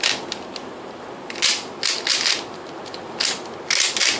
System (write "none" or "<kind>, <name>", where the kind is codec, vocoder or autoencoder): none